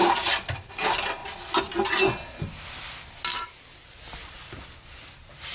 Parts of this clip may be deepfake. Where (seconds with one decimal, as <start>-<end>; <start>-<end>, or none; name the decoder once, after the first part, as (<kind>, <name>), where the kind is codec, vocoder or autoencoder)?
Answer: none

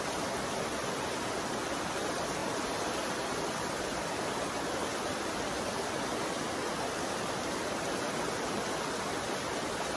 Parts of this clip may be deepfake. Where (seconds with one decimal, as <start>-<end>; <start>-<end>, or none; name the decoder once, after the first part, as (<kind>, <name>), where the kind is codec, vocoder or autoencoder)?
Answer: none

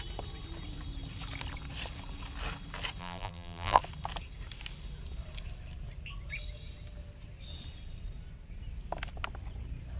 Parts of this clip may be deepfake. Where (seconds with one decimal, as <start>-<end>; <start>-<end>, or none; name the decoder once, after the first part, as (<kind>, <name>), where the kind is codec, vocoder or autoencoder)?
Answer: 3.0-3.8 (vocoder, BigVGAN v2)

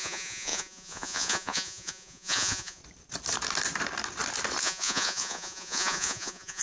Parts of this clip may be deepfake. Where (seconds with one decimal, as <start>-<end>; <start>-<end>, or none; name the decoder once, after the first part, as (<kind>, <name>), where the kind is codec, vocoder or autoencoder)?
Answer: 0.0-2.8 (vocoder, Vocos); 4.6-6.6

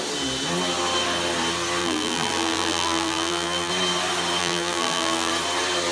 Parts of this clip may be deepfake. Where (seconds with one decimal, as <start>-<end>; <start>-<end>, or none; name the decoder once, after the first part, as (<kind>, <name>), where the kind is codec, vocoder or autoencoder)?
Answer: 1.8-3.7 (vocoder, BigVGAN v2); 4.4-5.3

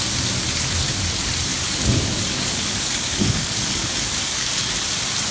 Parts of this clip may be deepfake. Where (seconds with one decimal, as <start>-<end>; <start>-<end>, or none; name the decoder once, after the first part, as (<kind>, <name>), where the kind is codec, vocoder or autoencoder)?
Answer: 1.5-4.7 (codec, DAC)

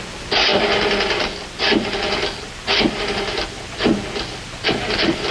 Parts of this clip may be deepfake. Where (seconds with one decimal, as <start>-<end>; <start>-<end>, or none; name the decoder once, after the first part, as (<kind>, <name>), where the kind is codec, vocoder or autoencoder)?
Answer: none